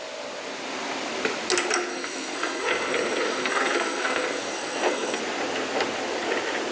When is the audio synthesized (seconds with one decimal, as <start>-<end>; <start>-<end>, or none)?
1.9-5.2